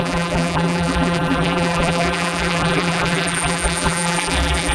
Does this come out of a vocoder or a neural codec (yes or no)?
yes